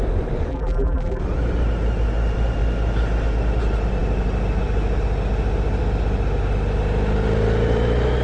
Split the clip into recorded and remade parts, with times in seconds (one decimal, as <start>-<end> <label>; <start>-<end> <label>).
0.0-0.5 recorded; 0.5-1.2 remade; 1.2-8.2 recorded